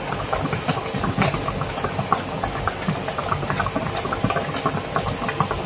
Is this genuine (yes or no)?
yes